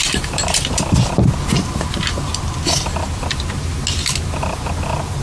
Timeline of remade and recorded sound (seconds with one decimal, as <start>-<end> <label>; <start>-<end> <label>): 0.0-0.7 remade; 0.7-5.2 recorded